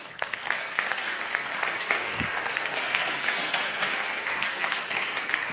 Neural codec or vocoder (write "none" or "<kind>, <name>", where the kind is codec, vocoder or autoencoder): codec, SNAC